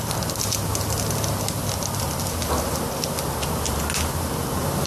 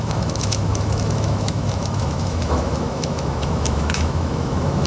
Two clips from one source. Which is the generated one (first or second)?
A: second